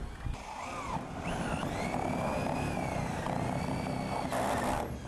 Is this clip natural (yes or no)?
yes